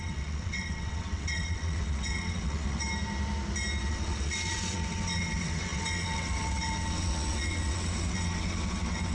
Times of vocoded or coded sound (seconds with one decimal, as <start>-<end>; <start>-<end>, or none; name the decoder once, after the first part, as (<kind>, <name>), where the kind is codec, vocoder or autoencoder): 0.0-2.8 (vocoder, WaveNeXt); 3.9-9.1

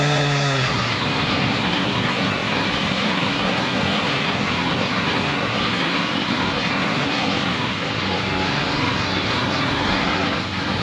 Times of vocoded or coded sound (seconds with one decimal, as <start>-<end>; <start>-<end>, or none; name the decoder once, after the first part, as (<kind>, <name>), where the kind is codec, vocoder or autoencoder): 0.0-10.8 (codec, SNAC)

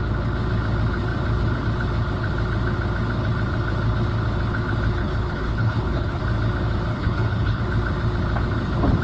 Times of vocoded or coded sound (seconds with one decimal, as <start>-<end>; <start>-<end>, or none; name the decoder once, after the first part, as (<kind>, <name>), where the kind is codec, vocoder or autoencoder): 5.0-6.2 (codec, HILCodec); 6.9-7.6

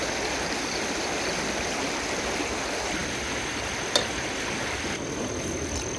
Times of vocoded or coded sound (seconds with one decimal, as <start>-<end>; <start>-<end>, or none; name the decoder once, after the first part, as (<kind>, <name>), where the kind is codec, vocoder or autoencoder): none

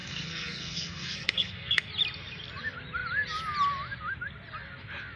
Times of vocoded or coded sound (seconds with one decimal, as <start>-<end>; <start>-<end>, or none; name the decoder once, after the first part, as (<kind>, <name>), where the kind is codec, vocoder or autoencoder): 0.0-1.9 (codec, SNAC)

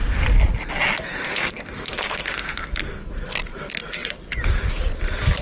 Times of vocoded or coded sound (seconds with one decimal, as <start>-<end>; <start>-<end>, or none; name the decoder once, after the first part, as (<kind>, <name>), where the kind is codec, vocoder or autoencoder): 1.1-2.7 (codec, SNAC)

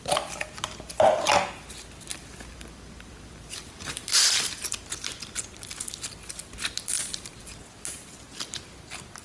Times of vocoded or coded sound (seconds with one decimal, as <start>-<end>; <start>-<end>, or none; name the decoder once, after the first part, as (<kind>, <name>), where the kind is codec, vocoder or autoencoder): 2.1-4.9 (vocoder, BigVGAN v2)